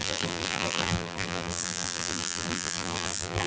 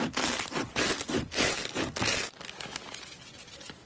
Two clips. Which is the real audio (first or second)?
second